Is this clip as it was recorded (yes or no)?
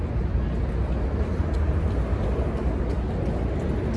yes